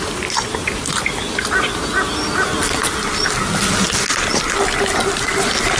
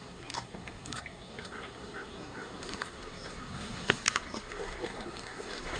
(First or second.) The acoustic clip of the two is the first